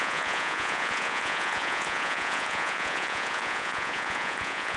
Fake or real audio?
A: fake